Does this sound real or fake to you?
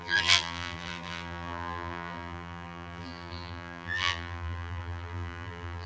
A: fake